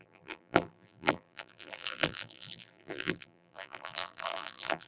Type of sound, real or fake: fake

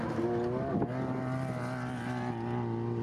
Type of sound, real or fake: real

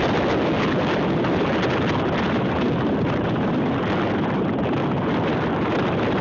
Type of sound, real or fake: real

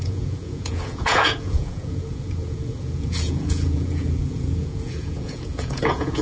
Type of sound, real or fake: fake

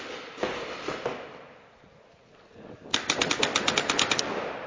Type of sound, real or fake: real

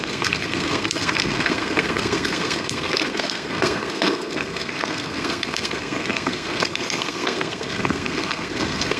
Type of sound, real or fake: fake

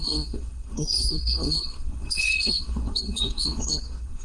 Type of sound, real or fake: fake